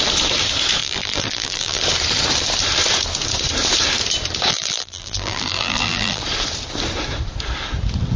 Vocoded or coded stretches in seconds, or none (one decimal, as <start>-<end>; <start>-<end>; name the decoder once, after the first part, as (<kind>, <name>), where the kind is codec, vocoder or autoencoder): 0.8-1.8 (vocoder, BigVGAN v2); 4.5-6.2